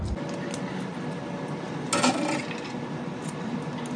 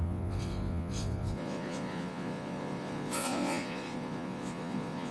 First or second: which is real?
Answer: first